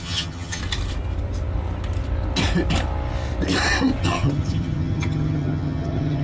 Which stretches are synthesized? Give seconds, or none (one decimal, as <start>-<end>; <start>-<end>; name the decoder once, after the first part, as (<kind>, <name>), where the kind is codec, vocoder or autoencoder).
0.0-0.6 (vocoder, HiFi-GAN); 4.0-6.2